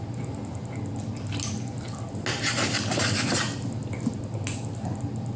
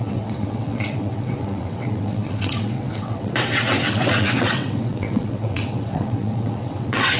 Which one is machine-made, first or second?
second